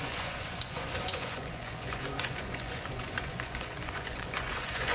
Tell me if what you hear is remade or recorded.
remade